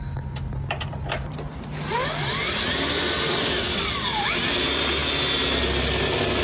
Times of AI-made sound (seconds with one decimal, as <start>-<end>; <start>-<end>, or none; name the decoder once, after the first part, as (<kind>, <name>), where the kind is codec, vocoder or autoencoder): none